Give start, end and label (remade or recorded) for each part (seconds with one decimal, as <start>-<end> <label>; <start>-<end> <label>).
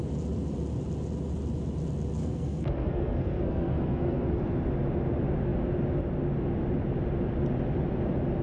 0.0-2.2 recorded; 2.2-4.4 remade; 4.4-8.4 recorded